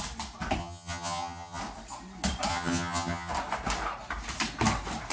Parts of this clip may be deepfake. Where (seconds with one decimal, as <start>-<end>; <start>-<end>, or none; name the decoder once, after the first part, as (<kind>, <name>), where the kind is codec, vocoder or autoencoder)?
0.6-1.6 (vocoder, HiFi-GAN); 2.5-3.3